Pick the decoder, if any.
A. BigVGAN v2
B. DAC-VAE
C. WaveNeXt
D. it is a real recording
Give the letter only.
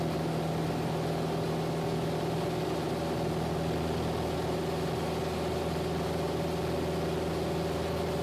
D